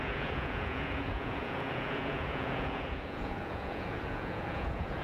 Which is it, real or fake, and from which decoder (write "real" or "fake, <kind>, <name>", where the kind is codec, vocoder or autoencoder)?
fake, vocoder, Vocos